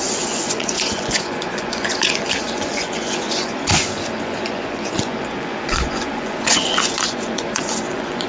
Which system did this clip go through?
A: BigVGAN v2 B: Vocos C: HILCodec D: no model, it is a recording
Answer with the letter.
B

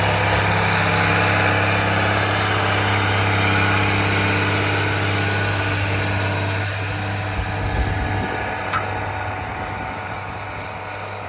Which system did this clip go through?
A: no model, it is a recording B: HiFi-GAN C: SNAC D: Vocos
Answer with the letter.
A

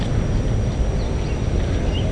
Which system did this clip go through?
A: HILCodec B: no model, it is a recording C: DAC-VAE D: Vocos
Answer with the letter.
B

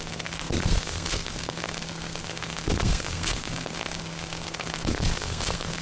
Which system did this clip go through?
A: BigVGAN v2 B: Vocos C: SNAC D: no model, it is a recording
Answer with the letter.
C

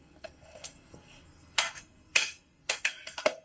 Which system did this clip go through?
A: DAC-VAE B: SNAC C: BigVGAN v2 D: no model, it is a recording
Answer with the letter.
B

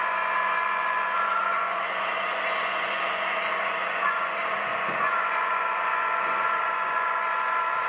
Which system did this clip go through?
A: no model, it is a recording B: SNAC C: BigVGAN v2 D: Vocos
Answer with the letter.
D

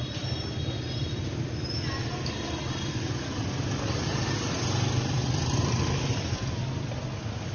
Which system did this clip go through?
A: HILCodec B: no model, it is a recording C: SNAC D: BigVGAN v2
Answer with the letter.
B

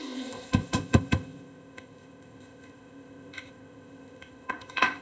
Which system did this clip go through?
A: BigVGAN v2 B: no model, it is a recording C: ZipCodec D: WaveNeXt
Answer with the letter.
C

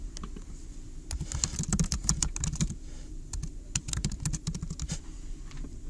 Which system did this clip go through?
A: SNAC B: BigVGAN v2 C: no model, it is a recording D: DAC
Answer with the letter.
B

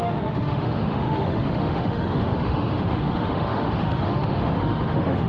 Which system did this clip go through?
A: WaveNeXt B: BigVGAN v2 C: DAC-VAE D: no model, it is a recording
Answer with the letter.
C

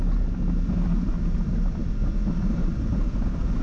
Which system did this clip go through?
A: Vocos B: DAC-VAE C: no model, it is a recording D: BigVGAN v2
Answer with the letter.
C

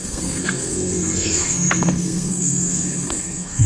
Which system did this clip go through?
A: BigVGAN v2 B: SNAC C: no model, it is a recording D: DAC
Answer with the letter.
B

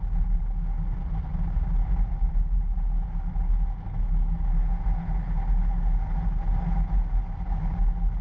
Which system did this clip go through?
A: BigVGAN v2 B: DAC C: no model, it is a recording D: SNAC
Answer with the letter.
C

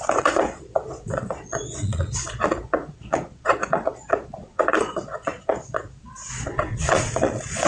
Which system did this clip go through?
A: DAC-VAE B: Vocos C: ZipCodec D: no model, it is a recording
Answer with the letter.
B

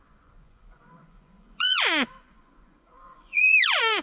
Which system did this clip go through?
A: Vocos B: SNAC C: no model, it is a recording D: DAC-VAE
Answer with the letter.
A